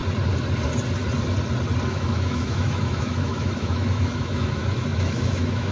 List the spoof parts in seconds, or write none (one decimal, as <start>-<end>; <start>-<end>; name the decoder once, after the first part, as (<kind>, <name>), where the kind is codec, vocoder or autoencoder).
1.9-5.7 (autoencoder, DAC-VAE)